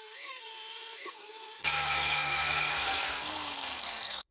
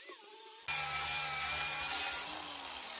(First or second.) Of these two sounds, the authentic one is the second